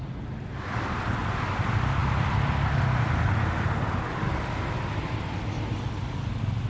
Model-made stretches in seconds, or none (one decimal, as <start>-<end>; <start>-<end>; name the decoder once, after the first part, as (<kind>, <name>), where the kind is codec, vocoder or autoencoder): none